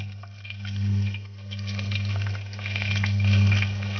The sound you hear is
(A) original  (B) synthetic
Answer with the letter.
B